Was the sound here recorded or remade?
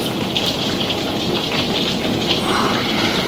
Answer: remade